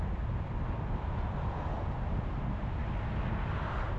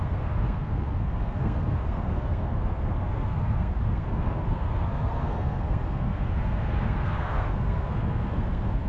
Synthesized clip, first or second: second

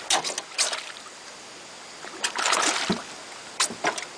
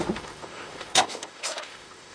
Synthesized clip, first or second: second